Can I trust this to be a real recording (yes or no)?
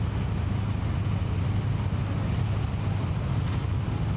yes